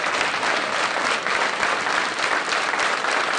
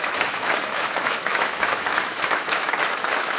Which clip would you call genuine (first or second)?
first